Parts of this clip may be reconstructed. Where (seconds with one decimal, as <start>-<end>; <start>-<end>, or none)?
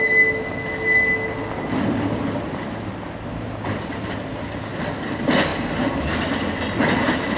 none